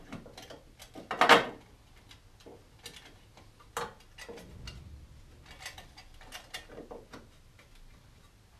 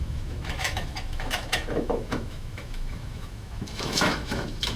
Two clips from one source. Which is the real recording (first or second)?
first